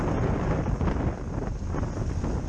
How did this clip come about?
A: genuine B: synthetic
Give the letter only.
A